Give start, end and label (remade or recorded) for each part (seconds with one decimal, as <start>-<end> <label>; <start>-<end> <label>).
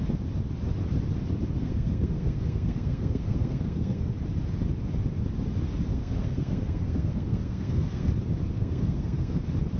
0.0-1.6 recorded; 1.6-4.1 remade; 4.1-5.9 recorded; 5.9-8.1 remade; 8.1-8.5 recorded; 8.5-9.4 remade; 9.4-9.8 recorded